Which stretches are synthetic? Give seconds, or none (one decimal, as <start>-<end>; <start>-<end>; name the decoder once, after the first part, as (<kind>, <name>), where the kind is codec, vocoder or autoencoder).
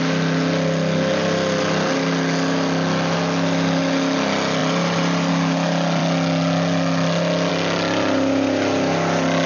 4.6-5.3 (vocoder, BigVGAN v2)